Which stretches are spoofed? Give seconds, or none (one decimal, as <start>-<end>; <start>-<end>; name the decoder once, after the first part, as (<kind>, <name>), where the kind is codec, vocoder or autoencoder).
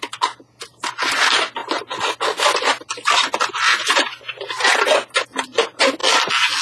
none